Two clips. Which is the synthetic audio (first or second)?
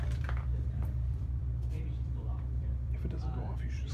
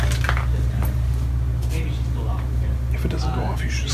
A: first